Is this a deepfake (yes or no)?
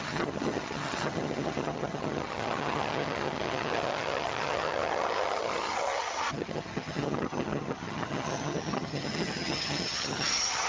yes